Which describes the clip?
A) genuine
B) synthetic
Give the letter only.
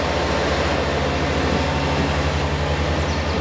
A